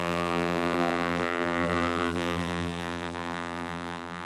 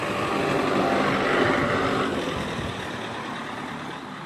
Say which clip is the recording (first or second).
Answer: second